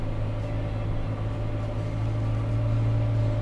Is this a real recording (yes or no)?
yes